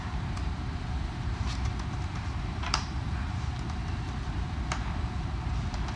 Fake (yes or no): yes